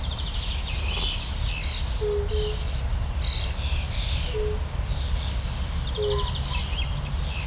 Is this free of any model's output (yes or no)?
yes